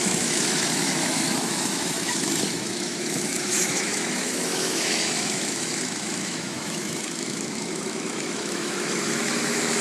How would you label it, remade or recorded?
remade